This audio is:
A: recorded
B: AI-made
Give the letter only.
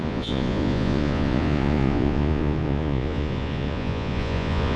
B